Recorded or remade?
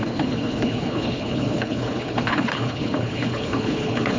remade